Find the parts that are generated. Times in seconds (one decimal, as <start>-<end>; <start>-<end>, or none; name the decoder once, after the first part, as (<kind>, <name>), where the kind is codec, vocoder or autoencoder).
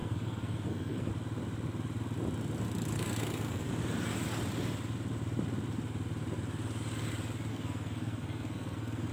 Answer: 0.0-1.1 (codec, SNAC); 2.9-3.7; 7.5-9.1